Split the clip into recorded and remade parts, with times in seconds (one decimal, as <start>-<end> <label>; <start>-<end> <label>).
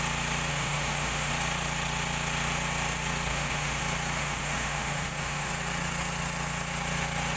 0.0-0.5 recorded; 0.5-1.3 remade; 1.3-3.3 recorded; 3.3-3.8 remade; 3.8-4.2 recorded; 4.2-5.5 remade; 5.5-7.4 recorded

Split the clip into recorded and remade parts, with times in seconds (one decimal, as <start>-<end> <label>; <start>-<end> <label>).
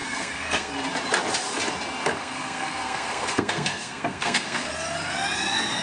0.0-0.7 remade; 0.7-2.2 recorded; 2.2-4.7 remade; 4.7-5.8 recorded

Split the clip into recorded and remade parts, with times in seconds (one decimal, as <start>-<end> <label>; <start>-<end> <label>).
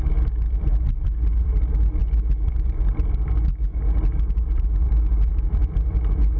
0.0-6.4 recorded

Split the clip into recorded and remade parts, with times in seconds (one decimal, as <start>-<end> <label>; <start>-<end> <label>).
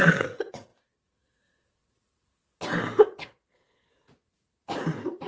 0.0-0.7 remade; 0.7-3.9 recorded; 3.9-5.3 remade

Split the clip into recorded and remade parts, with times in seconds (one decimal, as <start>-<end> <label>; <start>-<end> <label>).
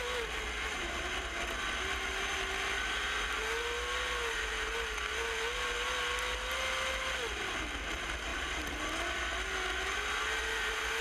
0.0-11.0 recorded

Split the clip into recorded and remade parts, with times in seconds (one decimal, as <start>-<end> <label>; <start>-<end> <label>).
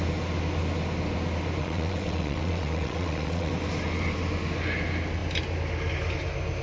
0.0-1.6 recorded; 1.6-3.5 remade; 3.5-6.6 recorded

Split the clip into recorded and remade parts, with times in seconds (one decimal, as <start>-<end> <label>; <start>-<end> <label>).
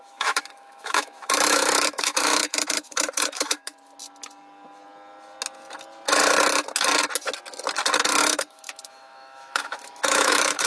0.0-3.7 remade; 3.7-8.2 recorded; 8.2-10.7 remade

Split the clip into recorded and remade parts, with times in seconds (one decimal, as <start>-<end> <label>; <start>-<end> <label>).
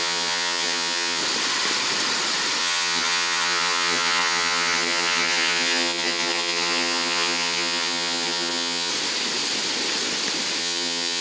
0.0-1.2 remade; 1.2-2.6 recorded; 2.6-8.9 remade; 8.9-10.6 recorded; 10.6-11.2 remade